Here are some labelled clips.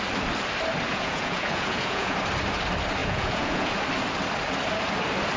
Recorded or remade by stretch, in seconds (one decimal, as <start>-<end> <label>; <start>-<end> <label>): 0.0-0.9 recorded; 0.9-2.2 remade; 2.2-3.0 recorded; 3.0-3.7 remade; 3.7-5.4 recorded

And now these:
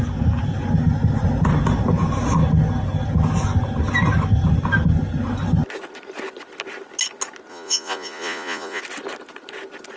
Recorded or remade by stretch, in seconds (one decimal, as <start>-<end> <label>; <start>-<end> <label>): 0.0-7.5 recorded; 7.5-8.8 remade; 8.8-10.0 recorded

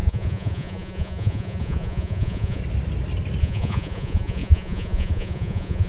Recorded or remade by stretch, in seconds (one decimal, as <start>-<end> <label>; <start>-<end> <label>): 0.0-2.6 remade; 2.6-3.4 recorded; 3.4-5.9 remade

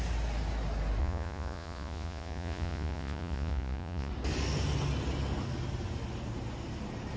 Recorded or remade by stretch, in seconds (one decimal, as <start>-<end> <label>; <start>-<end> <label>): 0.0-1.0 recorded; 1.0-4.1 remade; 4.1-7.2 recorded

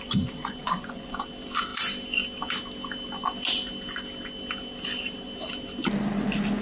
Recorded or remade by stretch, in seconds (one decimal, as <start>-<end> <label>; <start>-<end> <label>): 0.0-0.4 recorded; 0.4-1.1 remade; 1.1-6.6 recorded